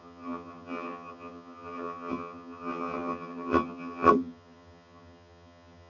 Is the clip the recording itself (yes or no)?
no